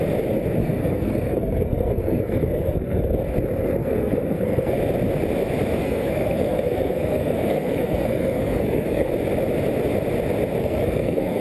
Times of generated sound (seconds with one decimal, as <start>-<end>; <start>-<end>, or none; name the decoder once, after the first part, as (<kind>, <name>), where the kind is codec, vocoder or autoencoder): 0.6-3.0 (codec, SNAC); 3.8-4.8; 5.8-9.1; 10.6-11.4